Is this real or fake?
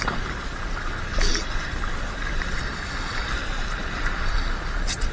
real